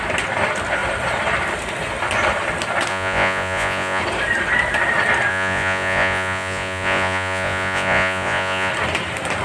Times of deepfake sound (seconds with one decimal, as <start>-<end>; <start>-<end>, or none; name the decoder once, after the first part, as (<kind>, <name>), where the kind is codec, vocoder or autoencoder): 2.9-4.0 (vocoder, Vocos); 5.3-8.7